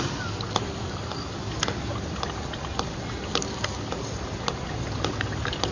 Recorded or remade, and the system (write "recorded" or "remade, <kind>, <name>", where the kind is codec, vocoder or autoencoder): recorded